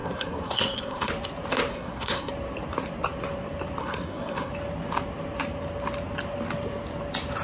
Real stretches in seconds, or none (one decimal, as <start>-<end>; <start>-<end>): 1.1-1.7; 2.3-3.8; 4.5-7.4